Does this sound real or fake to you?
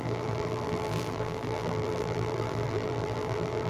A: fake